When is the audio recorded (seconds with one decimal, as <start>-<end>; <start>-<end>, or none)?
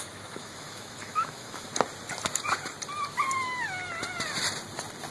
1.7-5.1